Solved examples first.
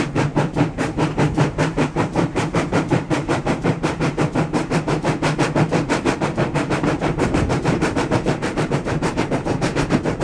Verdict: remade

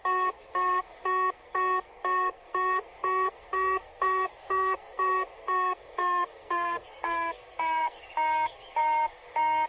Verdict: remade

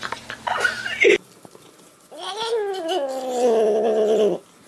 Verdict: recorded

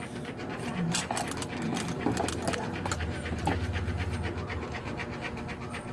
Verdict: recorded